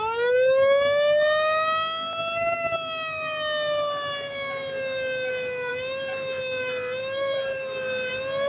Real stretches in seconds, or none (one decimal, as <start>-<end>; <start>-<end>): 0.0-5.7; 8.1-8.5